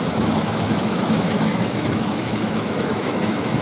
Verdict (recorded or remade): remade